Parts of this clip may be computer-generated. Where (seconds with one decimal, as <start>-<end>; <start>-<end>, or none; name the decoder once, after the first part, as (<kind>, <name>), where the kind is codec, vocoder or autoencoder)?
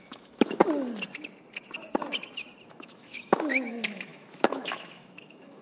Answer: 0.0-0.6 (autoencoder, DAC-VAE); 2.7-5.6